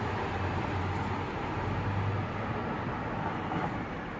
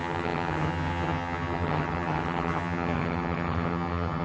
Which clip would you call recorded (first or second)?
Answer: first